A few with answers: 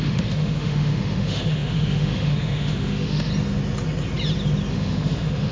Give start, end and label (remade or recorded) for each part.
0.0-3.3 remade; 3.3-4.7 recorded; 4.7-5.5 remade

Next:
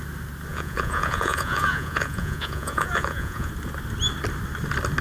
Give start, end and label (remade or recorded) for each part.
0.0-0.5 recorded; 0.5-3.5 remade; 3.5-5.0 recorded

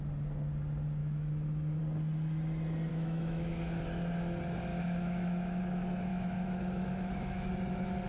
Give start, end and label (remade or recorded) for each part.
0.0-1.0 recorded; 1.0-1.8 remade; 1.8-2.9 recorded; 2.9-3.8 remade; 3.8-4.7 recorded; 4.7-5.6 remade; 5.6-6.1 recorded; 6.1-7.5 remade; 7.5-8.1 recorded

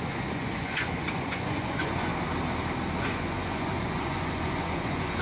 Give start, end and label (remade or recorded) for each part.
0.0-2.1 remade; 2.1-3.0 recorded; 3.0-5.2 remade